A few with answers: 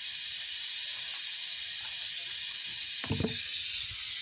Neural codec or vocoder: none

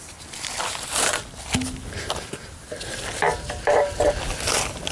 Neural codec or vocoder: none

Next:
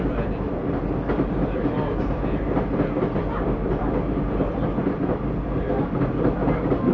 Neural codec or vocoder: none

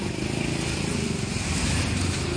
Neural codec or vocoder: none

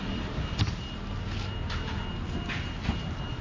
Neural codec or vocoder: none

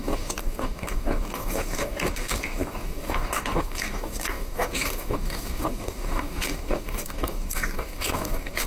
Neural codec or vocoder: codec, DAC